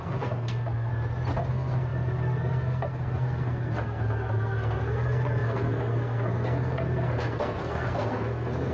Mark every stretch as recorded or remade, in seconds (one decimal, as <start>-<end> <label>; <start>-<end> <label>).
0.0-0.9 remade; 0.9-1.5 recorded; 1.5-8.7 remade